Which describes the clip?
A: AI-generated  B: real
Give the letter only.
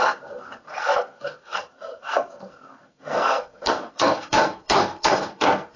A